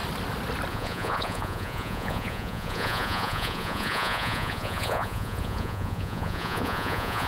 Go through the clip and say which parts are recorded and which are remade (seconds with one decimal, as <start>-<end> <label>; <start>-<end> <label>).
0.0-0.7 recorded; 0.7-7.3 remade

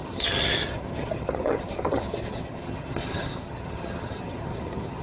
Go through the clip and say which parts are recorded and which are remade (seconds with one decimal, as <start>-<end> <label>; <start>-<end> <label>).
0.0-5.0 remade

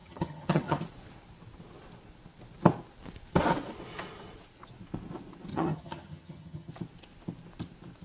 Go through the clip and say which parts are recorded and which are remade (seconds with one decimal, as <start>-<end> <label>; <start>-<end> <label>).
0.0-0.8 remade; 0.8-5.5 recorded; 5.5-6.7 remade; 6.7-8.0 recorded

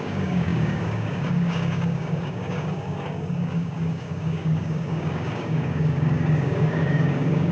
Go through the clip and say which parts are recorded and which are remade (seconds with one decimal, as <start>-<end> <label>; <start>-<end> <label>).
0.0-7.5 remade